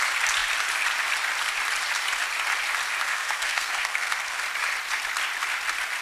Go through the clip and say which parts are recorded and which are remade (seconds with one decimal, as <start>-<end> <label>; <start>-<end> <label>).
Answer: 0.0-3.1 recorded; 3.1-4.4 remade; 4.4-6.0 recorded

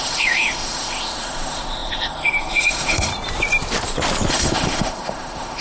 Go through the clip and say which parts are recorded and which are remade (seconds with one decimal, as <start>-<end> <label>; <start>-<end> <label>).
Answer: 0.0-3.1 remade; 3.1-4.3 recorded; 4.3-5.6 remade

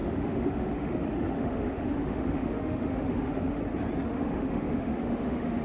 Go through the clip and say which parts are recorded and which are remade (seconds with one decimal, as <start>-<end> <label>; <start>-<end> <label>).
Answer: 0.0-3.6 remade; 3.6-4.1 recorded; 4.1-5.6 remade

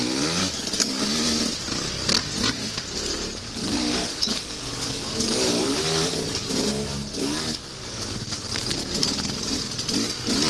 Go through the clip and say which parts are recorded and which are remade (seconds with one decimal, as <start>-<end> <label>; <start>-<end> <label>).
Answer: 0.0-0.4 recorded; 0.4-1.0 remade; 1.0-3.6 recorded; 3.6-8.5 remade; 8.5-9.0 recorded; 9.0-9.6 remade; 9.6-10.5 recorded

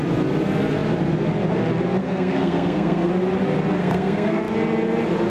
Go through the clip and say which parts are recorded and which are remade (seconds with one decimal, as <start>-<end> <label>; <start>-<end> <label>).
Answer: 0.0-2.0 recorded; 2.0-3.1 remade; 3.1-3.8 recorded; 3.8-4.4 remade; 4.4-5.3 recorded

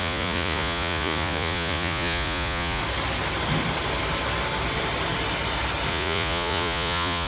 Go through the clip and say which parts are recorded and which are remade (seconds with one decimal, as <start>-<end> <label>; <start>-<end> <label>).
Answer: 0.0-2.8 remade; 2.8-5.9 recorded; 5.9-7.3 remade

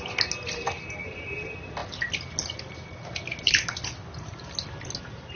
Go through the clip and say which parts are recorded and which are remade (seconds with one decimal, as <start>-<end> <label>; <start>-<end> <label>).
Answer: 0.0-5.4 recorded

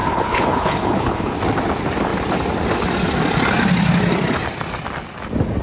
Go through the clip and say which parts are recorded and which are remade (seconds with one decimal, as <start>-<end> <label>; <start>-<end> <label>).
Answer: 0.0-1.4 remade; 1.4-5.6 recorded